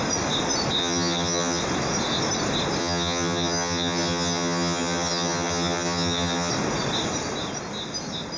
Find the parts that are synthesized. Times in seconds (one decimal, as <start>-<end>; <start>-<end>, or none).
0.8-1.6; 2.8-6.5